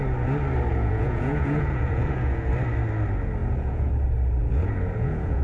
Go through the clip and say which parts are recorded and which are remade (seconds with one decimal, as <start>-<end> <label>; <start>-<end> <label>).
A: 0.0-0.7 recorded; 0.7-2.5 remade; 2.5-3.4 recorded; 3.4-3.9 remade; 3.9-4.4 recorded; 4.4-5.4 remade

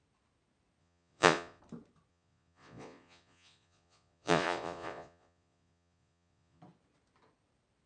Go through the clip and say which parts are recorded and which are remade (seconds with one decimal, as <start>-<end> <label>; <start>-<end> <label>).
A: 0.0-0.8 recorded; 0.8-1.6 remade; 1.6-2.1 recorded; 2.1-6.6 remade; 6.6-7.9 recorded

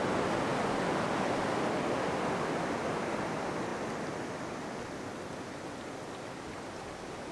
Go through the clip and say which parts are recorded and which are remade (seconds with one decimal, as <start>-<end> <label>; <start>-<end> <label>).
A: 0.0-7.3 recorded

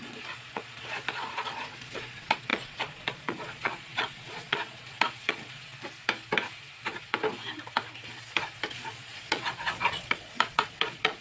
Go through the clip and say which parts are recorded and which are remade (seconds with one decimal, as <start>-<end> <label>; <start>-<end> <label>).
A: 0.0-5.7 remade; 5.7-8.7 recorded; 8.7-11.2 remade

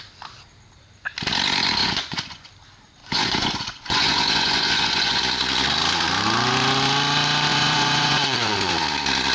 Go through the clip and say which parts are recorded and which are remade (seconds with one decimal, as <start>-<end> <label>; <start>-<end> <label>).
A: 0.0-1.8 recorded; 1.8-2.5 remade; 2.5-3.0 recorded; 3.0-5.2 remade; 5.2-7.5 recorded; 7.5-8.7 remade; 8.7-9.3 recorded